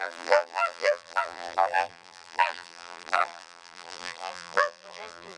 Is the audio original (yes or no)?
no